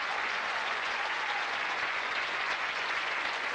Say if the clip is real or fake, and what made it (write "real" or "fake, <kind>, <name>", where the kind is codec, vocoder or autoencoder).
fake, vocoder, Vocos